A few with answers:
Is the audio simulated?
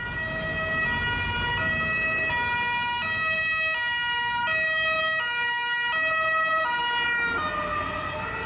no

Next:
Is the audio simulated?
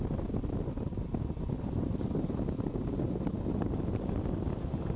no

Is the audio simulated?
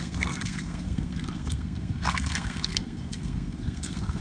yes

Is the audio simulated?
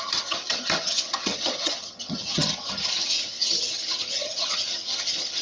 yes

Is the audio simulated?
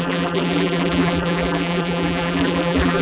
yes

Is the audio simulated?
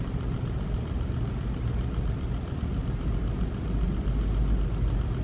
no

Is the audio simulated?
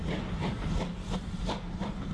no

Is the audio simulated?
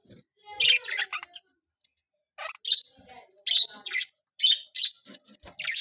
no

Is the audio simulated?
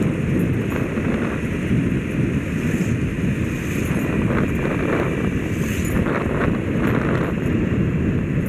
no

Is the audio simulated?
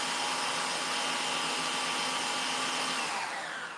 no